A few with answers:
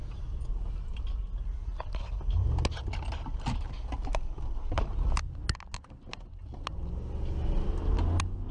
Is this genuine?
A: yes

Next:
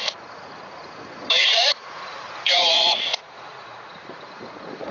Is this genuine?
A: no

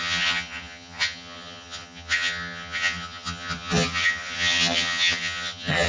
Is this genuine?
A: no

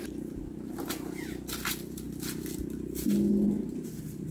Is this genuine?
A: yes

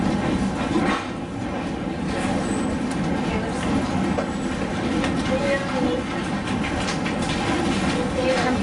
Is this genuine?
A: yes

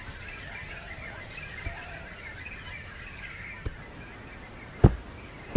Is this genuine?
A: yes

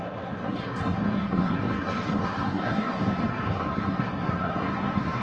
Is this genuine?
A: no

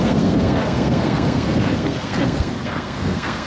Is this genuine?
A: no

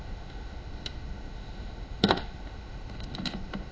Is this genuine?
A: no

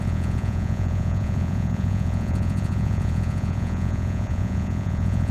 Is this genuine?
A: no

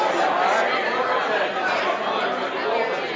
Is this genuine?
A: yes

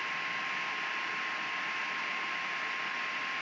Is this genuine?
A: yes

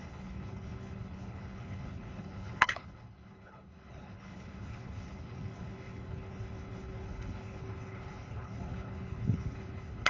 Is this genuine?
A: no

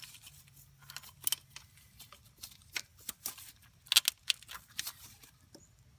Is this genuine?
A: yes